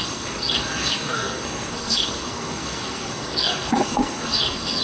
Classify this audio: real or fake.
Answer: fake